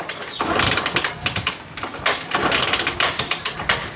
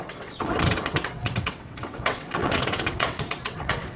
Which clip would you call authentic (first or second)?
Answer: first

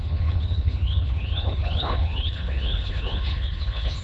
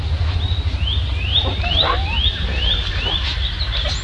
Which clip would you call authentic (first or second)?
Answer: second